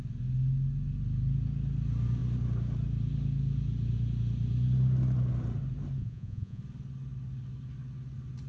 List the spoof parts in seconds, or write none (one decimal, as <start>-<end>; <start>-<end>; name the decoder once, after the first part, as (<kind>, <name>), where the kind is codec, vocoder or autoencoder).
6.0-6.6 (vocoder, Vocos)